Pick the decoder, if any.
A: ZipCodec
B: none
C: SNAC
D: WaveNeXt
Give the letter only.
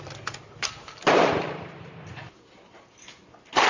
B